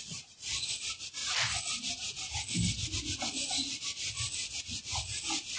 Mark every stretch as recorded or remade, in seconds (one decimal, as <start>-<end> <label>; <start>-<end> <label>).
0.0-5.6 recorded